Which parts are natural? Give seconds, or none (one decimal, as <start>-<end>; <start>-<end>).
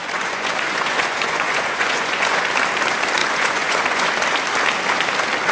2.4-3.2; 4.1-5.5